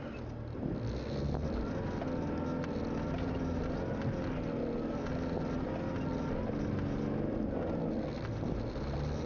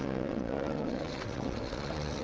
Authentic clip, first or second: first